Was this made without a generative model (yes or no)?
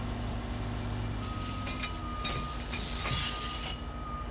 yes